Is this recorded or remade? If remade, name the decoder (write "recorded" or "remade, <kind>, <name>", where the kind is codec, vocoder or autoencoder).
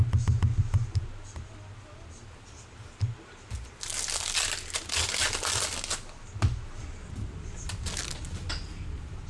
recorded